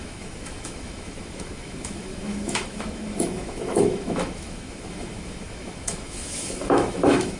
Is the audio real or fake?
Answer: fake